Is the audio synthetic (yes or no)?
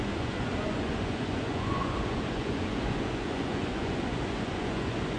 yes